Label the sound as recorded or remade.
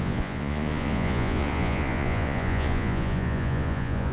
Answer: remade